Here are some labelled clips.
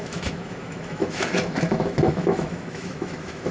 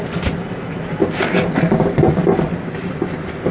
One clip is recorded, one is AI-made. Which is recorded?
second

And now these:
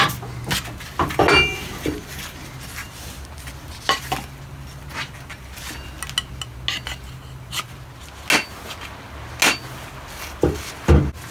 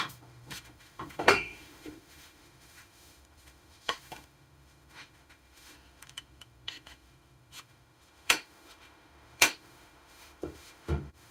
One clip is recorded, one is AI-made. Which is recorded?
first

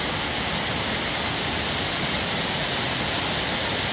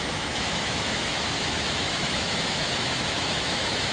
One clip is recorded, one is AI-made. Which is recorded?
first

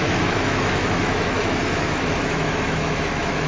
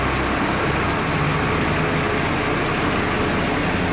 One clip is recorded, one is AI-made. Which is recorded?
second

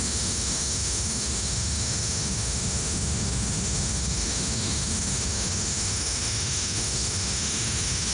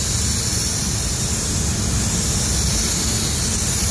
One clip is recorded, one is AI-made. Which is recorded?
second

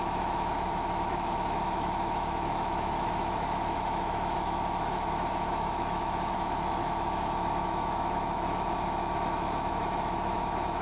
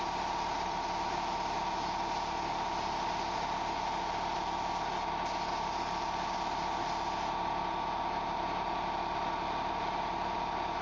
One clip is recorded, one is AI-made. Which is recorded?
second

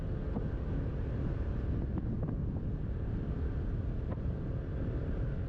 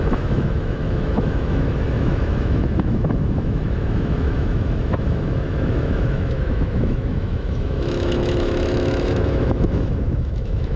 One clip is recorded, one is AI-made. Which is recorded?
first